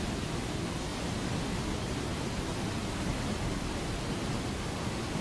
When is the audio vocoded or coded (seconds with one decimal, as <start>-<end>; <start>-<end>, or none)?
none

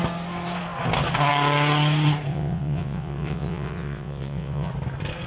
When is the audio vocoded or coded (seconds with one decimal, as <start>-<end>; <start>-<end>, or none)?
2.3-4.7

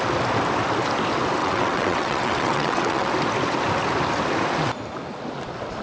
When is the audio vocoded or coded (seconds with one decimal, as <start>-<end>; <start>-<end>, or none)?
1.4-3.1

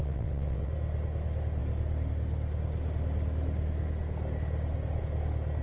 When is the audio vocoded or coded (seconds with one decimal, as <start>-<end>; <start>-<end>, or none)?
0.0-0.7

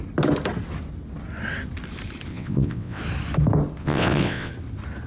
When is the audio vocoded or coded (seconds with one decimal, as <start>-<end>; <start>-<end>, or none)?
2.3-3.0; 3.8-4.5

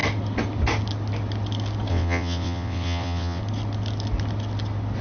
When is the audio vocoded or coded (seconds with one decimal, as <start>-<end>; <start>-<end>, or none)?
1.9-3.4

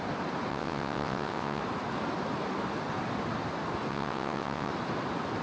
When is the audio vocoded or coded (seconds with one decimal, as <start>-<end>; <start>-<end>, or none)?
0.5-1.6; 3.9-4.7

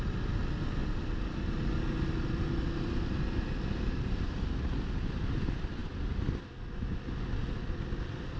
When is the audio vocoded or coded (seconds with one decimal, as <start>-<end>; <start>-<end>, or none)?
none